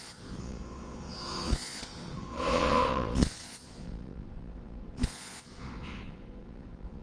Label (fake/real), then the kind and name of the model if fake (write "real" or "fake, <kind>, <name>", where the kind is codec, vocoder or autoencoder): fake, vocoder, Vocos